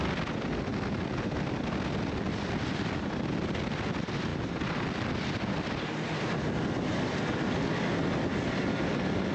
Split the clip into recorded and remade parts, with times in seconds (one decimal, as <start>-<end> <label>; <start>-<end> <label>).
0.0-9.3 recorded